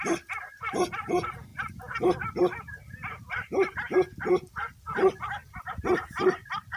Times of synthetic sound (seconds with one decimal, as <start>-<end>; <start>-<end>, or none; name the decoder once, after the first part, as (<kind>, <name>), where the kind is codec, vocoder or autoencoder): none